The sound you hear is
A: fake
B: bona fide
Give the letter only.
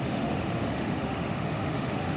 A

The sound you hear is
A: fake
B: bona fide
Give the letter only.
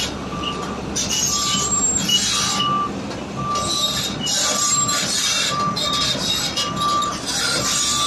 B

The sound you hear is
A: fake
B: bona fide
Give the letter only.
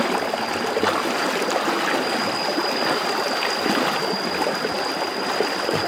B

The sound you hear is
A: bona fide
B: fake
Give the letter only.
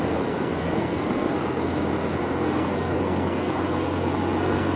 B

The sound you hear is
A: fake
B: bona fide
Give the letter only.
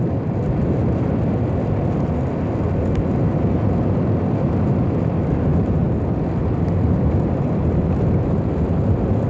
B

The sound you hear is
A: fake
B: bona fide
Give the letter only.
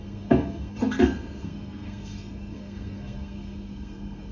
A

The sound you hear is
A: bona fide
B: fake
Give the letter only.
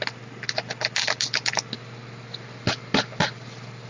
A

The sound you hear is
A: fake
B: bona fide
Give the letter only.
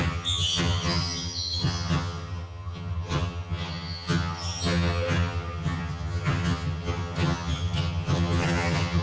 A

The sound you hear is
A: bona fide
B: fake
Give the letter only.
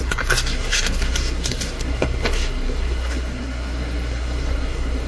B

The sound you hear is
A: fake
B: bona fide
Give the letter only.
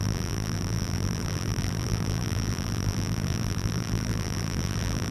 A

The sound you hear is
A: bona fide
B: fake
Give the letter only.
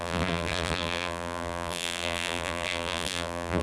B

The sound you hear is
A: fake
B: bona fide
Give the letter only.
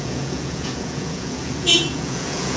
A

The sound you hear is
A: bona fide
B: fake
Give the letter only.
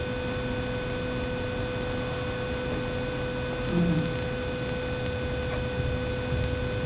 A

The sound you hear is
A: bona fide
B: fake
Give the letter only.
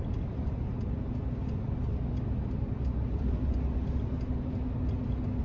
A